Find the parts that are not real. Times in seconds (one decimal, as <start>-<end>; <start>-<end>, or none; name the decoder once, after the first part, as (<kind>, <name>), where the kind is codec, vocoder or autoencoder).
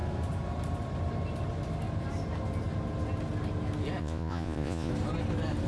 4.0-4.9 (vocoder, Vocos)